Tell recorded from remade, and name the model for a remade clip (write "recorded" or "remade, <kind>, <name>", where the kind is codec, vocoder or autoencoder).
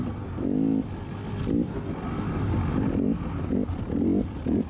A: recorded